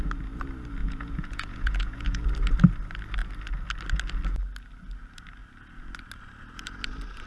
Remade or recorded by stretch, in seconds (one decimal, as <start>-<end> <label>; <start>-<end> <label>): 0.0-0.8 recorded; 0.8-2.2 remade; 2.2-7.3 recorded